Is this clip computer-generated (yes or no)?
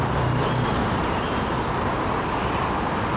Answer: no